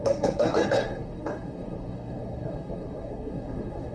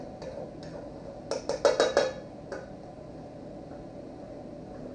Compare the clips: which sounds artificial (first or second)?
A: first